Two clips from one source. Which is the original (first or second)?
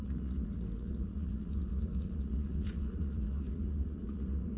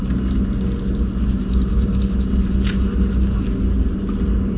second